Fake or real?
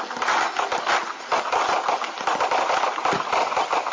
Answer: real